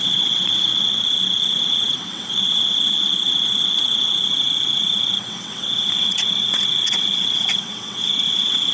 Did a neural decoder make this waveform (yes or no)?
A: yes